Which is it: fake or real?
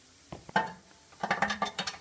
fake